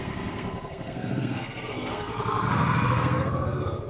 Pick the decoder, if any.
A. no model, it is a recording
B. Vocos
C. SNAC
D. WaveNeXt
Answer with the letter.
C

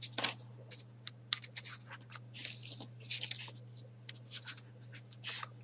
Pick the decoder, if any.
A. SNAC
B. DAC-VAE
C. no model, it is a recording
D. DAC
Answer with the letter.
C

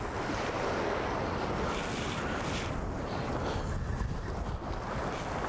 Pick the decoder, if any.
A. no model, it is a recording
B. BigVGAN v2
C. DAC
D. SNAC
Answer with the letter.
A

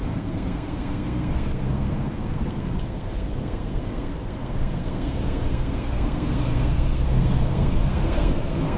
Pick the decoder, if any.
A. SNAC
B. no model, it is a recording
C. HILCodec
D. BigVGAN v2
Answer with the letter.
A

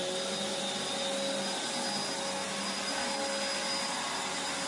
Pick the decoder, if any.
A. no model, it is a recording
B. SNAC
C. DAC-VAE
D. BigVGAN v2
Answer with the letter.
A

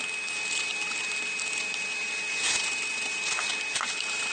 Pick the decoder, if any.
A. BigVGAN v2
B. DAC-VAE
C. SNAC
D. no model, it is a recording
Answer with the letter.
D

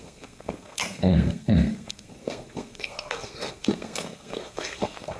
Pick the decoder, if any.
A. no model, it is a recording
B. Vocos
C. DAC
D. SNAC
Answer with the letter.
D